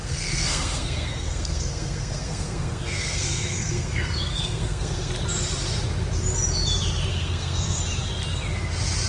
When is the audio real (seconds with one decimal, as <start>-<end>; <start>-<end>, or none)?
5.1-7.1; 7.8-9.1